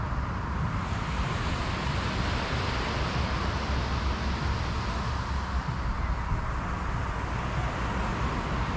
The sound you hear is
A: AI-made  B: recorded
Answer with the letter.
B